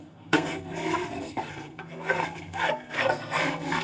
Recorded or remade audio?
remade